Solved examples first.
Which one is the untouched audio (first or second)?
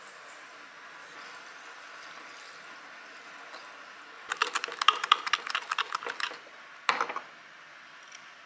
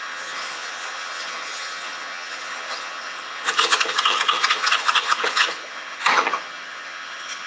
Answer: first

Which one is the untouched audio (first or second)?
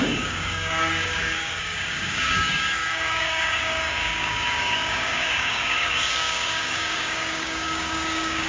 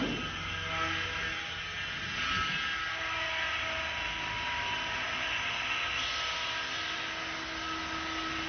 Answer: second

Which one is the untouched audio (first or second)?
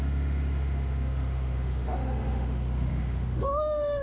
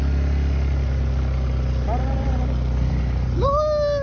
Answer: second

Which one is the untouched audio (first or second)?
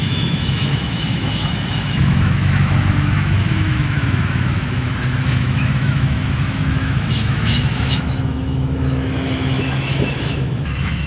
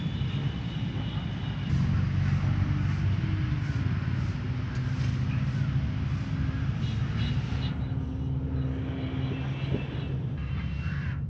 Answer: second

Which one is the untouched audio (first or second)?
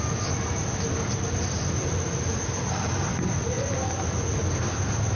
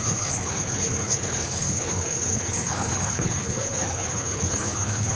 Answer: first